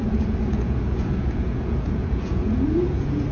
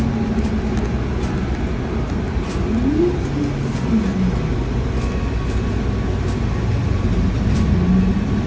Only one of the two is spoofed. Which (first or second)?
first